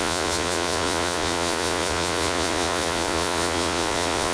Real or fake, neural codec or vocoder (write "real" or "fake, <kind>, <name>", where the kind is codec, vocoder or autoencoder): fake, vocoder, Vocos